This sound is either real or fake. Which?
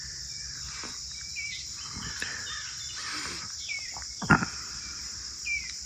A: fake